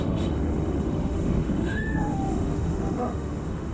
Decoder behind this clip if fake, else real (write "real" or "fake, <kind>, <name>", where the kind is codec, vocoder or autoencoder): fake, autoencoder, DAC-VAE